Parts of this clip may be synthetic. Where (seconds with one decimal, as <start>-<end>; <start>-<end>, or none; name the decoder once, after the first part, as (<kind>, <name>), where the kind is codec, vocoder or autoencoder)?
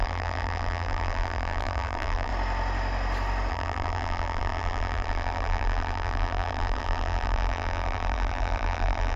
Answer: 0.0-2.3 (vocoder, BigVGAN v2); 3.5-9.2